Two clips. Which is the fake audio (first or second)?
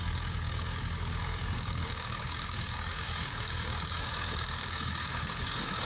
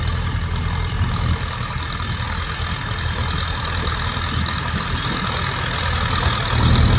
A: first